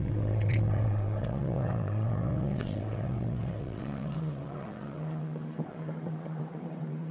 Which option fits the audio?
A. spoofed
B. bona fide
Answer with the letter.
A